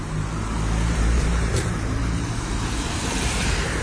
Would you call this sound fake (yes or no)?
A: yes